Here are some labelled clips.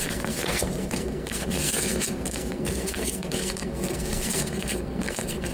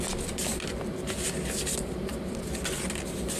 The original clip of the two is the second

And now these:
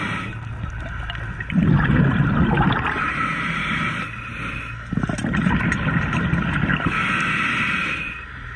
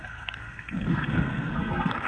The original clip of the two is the first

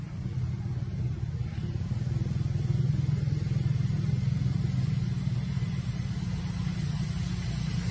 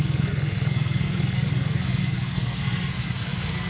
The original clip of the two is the first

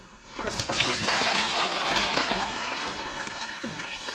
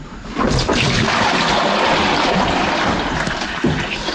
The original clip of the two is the second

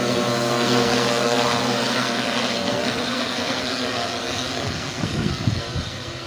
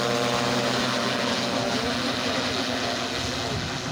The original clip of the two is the second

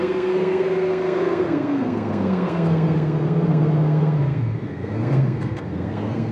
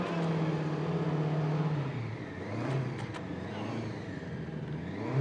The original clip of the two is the second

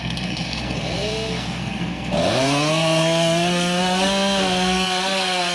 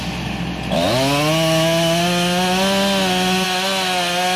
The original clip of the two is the second